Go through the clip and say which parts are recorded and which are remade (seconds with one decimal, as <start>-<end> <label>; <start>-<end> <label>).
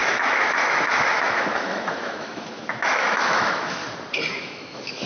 0.0-3.8 remade; 3.8-4.3 recorded; 4.3-5.1 remade